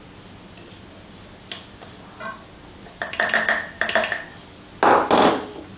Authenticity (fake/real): real